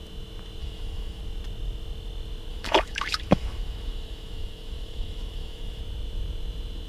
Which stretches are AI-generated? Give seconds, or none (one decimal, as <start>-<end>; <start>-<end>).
0.6-1.2; 2.5-5.8